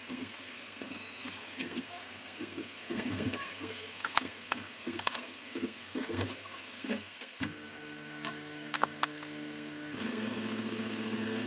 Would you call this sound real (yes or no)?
no